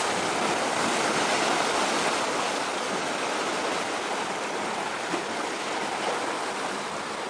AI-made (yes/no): no